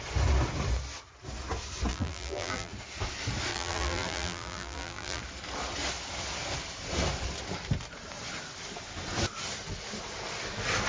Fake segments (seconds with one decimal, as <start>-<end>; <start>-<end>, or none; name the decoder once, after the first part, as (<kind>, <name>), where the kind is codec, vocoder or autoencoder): 1.9-2.7 (vocoder, BigVGAN v2); 3.5-5.2